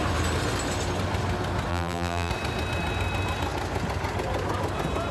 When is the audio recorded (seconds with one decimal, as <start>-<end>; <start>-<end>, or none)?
0.0-1.7; 2.3-5.1